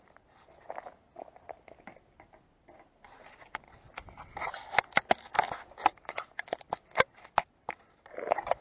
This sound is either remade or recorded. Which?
recorded